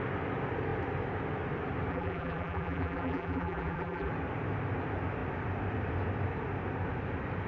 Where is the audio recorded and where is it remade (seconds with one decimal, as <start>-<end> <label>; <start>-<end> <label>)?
0.0-1.9 recorded; 1.9-4.1 remade; 4.1-7.5 recorded